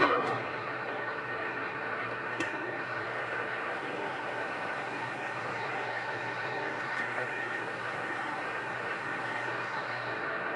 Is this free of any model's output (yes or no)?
no